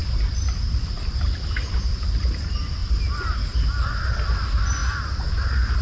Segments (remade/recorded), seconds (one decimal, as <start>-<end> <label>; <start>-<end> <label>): 0.0-5.8 recorded